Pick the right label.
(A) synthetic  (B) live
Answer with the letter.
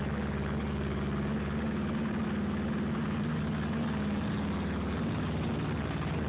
B